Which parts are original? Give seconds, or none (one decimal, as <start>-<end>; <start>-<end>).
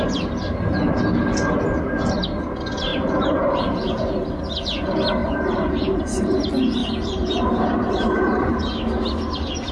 0.0-2.9; 4.3-5.2; 5.7-6.8; 8.4-9.7